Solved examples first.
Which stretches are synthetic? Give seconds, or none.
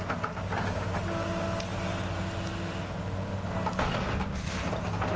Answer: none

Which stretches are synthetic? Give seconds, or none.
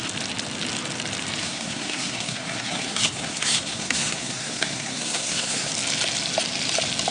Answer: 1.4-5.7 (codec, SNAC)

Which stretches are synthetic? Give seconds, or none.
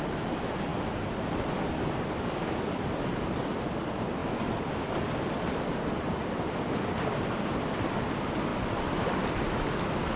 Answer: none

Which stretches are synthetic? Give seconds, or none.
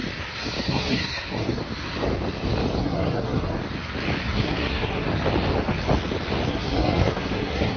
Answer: 0.6-1.6 (codec, SNAC); 2.8-3.6; 4.2-5.1; 6.5-7.8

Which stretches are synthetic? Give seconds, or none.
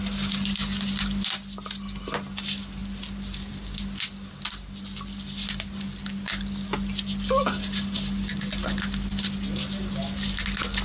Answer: none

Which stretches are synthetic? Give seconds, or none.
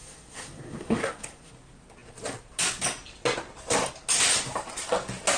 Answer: 0.0-1.5 (codec, SNAC)